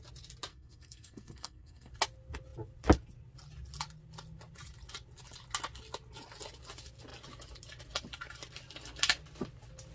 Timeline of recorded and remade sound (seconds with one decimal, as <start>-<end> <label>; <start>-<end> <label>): 0.0-0.5 recorded; 0.5-1.9 remade; 1.9-9.9 recorded